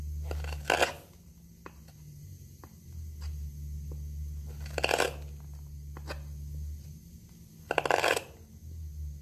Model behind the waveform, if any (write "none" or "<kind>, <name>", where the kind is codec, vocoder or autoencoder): none